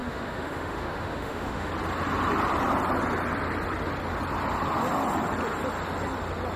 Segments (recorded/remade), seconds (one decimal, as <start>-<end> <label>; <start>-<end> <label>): 0.0-1.7 remade; 1.7-6.6 recorded